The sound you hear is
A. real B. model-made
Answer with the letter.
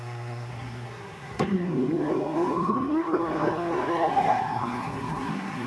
B